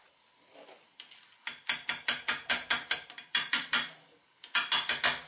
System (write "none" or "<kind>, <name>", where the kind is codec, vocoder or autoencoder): none